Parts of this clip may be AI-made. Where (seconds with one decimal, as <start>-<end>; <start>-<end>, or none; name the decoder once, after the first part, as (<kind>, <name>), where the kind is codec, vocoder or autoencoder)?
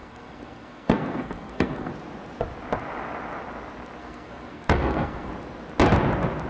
0.0-1.9 (codec, SNAC); 4.0-5.3